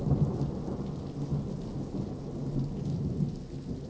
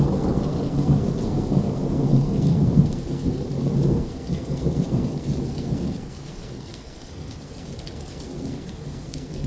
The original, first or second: first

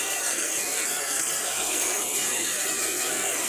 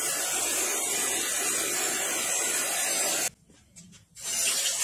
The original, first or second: second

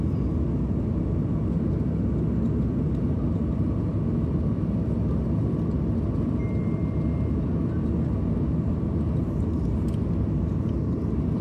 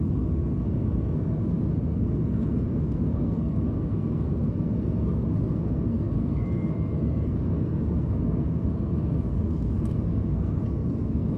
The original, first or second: first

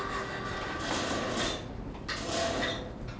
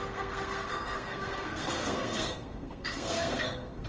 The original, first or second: first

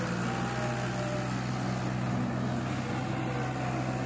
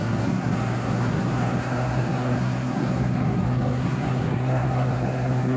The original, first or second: first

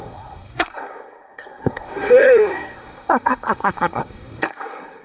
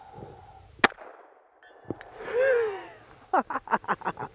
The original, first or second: second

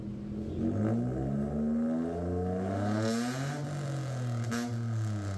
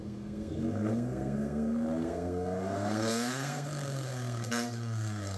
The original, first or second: first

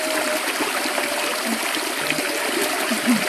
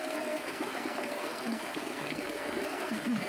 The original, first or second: first